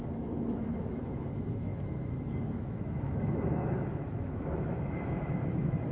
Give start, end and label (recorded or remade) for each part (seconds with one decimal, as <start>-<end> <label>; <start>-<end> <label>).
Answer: 0.0-5.9 remade